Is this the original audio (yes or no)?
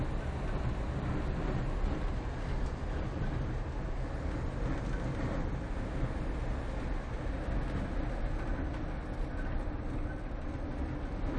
yes